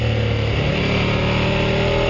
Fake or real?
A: real